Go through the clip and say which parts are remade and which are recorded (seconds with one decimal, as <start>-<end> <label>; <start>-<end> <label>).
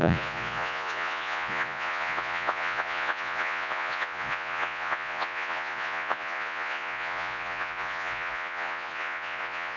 0.0-9.8 remade